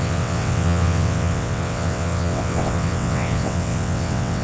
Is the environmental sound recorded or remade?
remade